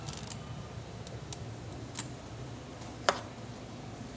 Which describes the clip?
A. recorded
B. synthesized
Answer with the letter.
A